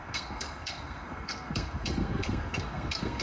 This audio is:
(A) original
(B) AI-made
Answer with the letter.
B